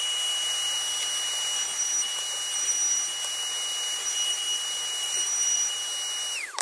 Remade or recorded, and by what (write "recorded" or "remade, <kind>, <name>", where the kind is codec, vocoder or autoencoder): recorded